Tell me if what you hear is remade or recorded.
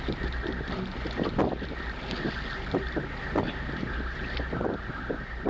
recorded